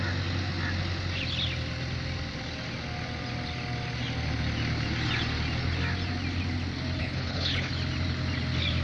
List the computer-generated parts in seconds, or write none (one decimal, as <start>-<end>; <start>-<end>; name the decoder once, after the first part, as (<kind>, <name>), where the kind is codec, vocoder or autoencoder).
7.0-7.7 (codec, HILCodec)